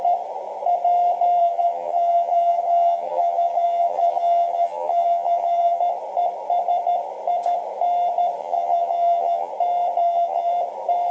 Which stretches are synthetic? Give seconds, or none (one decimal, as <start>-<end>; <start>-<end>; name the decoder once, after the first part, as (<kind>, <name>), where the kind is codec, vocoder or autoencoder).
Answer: 1.4-5.8 (vocoder, HiFi-GAN); 8.4-9.5; 10.0-10.5